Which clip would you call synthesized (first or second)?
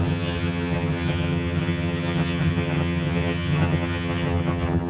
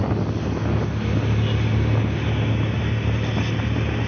first